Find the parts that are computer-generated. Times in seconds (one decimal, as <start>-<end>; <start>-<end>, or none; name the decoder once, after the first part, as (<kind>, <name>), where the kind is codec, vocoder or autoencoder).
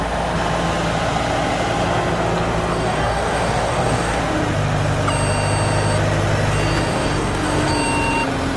2.7-4.2 (codec, DAC); 6.9-7.7